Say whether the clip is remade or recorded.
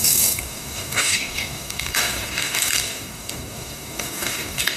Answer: remade